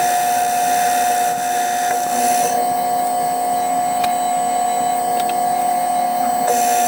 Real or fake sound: real